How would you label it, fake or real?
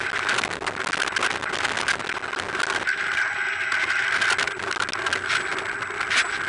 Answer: real